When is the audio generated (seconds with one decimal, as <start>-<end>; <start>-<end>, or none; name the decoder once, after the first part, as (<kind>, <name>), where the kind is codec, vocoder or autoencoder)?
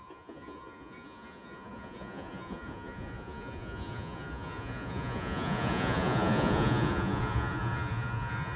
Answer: 0.0-8.6 (vocoder, Vocos)